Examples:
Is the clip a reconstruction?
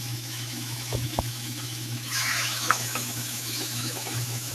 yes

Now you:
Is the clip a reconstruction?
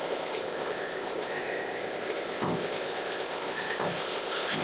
yes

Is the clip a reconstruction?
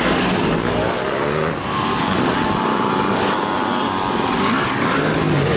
no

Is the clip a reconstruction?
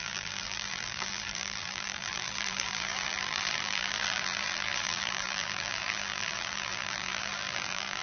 yes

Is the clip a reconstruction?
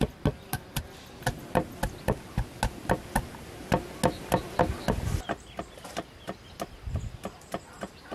no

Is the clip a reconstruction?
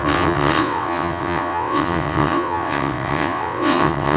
yes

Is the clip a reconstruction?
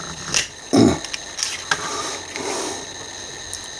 no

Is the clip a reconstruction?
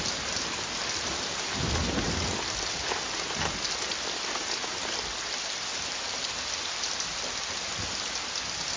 no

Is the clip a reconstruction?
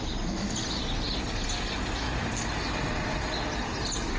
no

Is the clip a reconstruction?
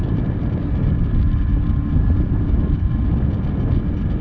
no